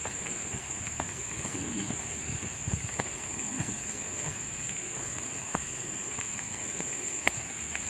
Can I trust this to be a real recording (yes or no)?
no